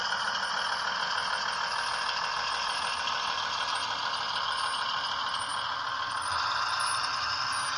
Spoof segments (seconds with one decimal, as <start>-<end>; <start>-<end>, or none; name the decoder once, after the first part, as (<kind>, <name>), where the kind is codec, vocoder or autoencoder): none